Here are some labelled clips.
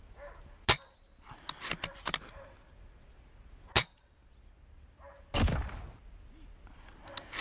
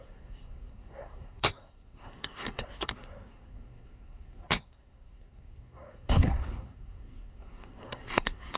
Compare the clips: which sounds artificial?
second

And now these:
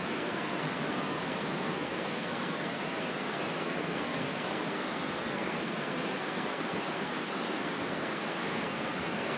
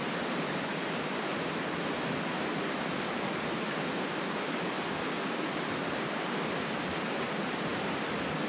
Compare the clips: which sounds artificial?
first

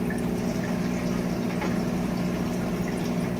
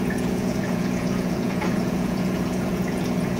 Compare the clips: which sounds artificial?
second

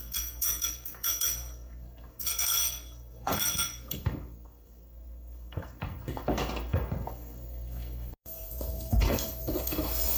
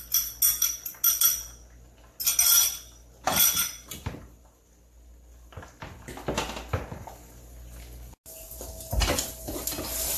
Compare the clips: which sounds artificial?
first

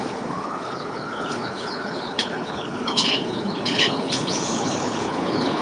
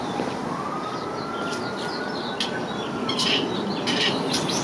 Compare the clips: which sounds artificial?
first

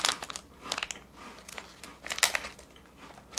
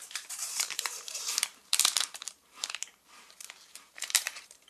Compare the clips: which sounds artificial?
second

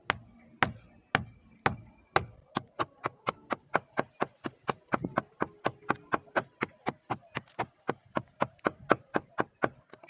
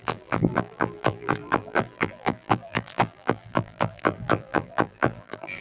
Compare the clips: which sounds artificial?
second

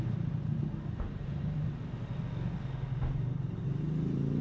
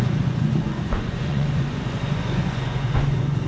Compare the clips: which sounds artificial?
second